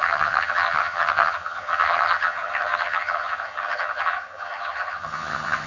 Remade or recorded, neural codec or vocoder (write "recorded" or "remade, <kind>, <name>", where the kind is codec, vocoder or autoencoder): remade, vocoder, HiFi-GAN